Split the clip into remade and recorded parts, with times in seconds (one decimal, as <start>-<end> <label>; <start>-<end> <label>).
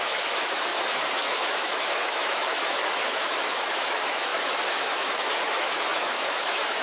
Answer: 0.0-6.8 remade